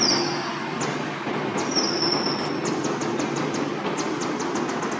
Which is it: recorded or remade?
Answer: recorded